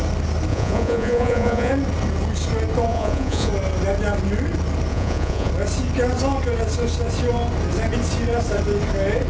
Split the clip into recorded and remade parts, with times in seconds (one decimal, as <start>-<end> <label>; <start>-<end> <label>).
0.0-0.5 recorded; 0.5-1.7 remade; 1.7-2.9 recorded; 2.9-3.5 remade; 3.5-4.9 recorded; 4.9-5.5 remade; 5.5-9.3 recorded